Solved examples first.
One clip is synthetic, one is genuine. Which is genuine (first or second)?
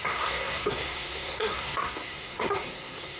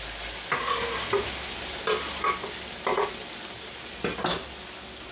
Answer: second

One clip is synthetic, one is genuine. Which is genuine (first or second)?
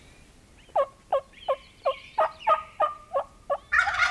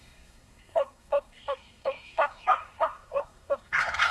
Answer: first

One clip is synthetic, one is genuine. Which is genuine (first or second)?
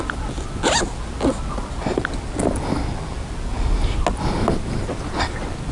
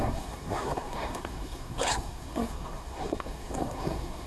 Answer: first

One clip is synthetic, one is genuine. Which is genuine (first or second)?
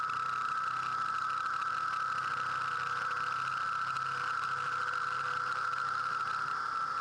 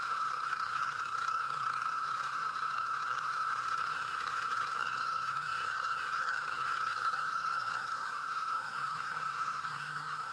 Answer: first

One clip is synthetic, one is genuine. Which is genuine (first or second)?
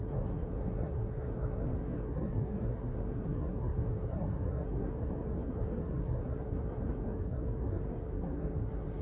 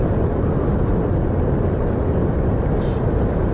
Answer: second